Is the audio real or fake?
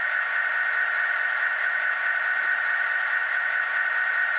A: real